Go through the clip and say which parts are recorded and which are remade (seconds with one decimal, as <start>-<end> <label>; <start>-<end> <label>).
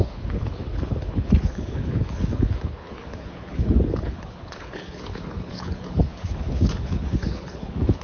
0.0-8.0 remade